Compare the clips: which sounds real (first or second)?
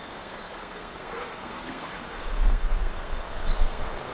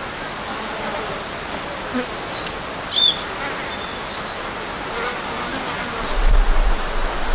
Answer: second